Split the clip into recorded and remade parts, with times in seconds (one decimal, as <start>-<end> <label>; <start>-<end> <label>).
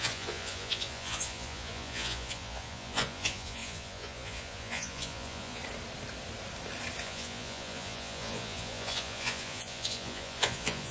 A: 0.0-5.6 remade; 5.6-7.0 recorded; 7.0-10.9 remade